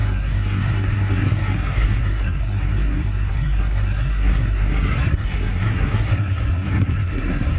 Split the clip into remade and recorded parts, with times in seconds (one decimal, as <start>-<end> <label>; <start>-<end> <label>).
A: 0.0-7.6 remade